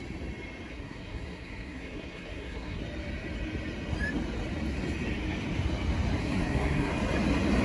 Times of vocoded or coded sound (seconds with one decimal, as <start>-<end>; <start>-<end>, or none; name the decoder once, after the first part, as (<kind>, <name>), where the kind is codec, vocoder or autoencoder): 0.7-2.8 (codec, SNAC); 6.2-6.9